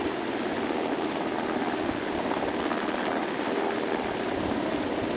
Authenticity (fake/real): real